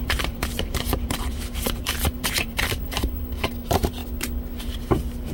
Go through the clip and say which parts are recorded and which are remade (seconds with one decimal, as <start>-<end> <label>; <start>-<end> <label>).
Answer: 0.0-4.0 remade; 4.0-4.6 recorded; 4.6-5.3 remade